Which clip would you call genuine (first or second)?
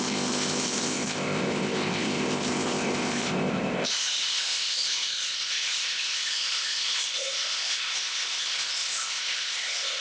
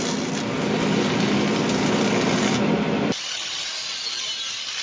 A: second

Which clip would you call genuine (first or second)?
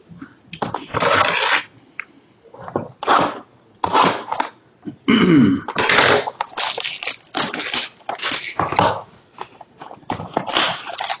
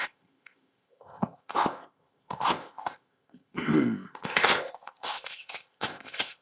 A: first